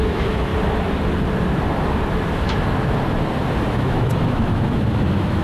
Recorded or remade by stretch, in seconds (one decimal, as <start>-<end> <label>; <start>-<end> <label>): 0.0-0.5 remade; 0.5-3.7 recorded; 3.7-5.4 remade

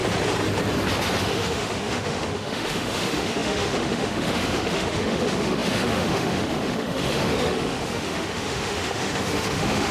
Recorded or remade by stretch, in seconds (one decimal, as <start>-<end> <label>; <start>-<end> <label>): 0.0-1.2 recorded; 1.2-9.9 remade

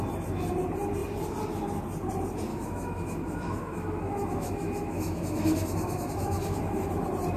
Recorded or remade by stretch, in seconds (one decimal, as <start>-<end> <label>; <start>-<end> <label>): 0.0-2.5 recorded; 2.5-6.9 remade; 6.9-7.4 recorded

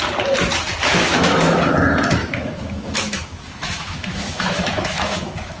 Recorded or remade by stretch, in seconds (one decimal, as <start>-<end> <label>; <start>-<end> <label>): 0.0-0.8 recorded; 0.8-1.6 remade; 1.6-2.2 recorded; 2.2-5.6 remade

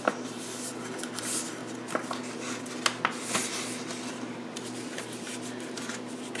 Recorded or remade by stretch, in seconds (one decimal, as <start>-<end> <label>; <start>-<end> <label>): 0.0-6.4 recorded